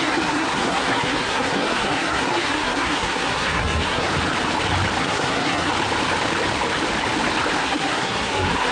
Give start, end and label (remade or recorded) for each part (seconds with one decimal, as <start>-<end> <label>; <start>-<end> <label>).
0.0-4.1 remade; 4.1-5.0 recorded; 5.0-5.7 remade; 5.7-7.6 recorded; 7.6-8.7 remade